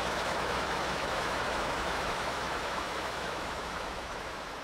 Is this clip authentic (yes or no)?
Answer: no